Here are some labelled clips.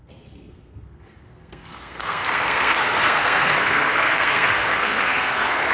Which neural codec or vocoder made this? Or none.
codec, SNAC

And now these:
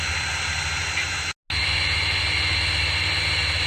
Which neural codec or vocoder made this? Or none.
none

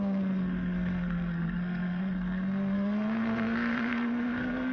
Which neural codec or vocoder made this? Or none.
codec, SNAC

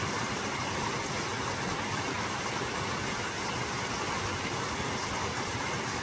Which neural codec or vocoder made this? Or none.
none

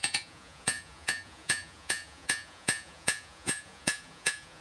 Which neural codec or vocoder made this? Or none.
vocoder, Vocos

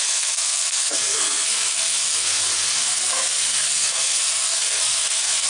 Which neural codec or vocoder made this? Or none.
codec, SNAC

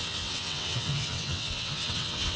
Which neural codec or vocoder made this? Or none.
vocoder, WaveNeXt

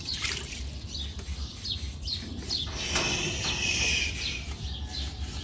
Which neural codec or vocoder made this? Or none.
none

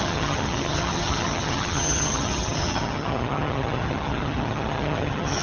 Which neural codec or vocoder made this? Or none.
vocoder, HiFi-GAN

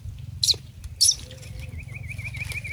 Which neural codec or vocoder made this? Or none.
none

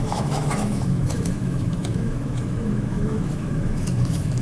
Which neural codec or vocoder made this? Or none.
autoencoder, DAC-VAE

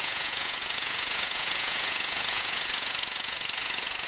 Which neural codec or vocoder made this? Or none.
vocoder, Vocos